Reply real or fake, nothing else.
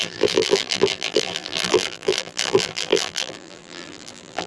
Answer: fake